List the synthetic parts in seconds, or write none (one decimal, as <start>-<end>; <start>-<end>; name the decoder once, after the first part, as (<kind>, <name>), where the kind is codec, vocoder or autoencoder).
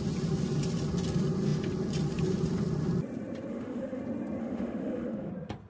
3.5-4.0 (autoencoder, DAC-VAE); 4.4-5.3